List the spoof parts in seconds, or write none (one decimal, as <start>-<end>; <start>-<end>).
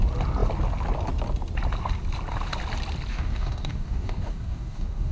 3.1-5.1